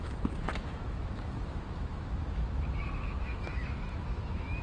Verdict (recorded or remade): remade